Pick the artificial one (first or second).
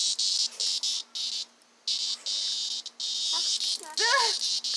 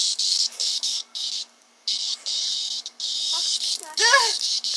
second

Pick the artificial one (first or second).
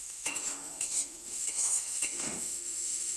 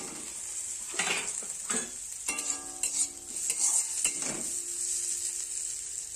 first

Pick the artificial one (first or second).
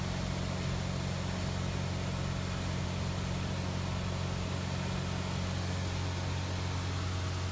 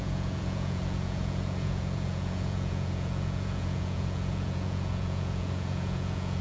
second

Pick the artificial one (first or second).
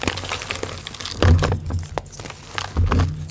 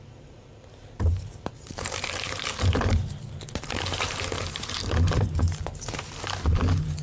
second